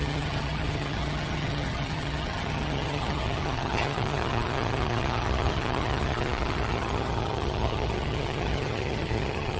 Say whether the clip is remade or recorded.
remade